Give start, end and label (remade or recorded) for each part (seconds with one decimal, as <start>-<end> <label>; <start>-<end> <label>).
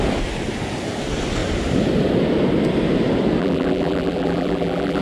0.0-3.4 recorded; 3.4-5.0 remade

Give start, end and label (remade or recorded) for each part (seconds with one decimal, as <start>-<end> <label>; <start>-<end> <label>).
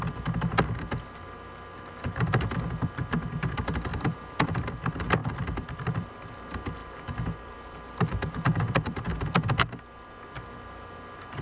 0.0-3.9 recorded; 3.9-4.6 remade; 4.6-5.2 recorded; 5.2-6.2 remade; 6.2-6.8 recorded; 6.8-9.0 remade; 9.0-11.4 recorded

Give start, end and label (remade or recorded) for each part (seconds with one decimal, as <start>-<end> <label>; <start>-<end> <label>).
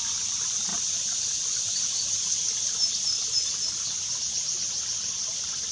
0.0-0.7 remade; 0.7-4.1 recorded; 4.1-5.7 remade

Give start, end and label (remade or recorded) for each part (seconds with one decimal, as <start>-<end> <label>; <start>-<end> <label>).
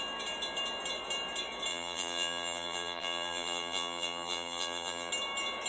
0.0-1.7 recorded; 1.7-5.1 remade; 5.1-5.7 recorded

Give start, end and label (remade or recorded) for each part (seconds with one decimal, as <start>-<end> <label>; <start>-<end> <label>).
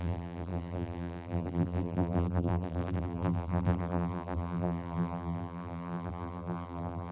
0.0-7.1 remade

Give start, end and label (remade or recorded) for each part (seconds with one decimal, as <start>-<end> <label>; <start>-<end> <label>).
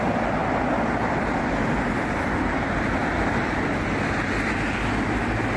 0.0-0.4 recorded; 0.4-1.4 remade; 1.4-3.0 recorded; 3.0-4.3 remade; 4.3-5.6 recorded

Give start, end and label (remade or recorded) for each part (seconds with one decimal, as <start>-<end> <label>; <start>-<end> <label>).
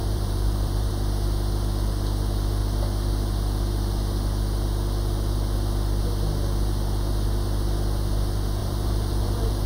0.0-0.9 remade; 0.9-8.6 recorded; 8.6-9.7 remade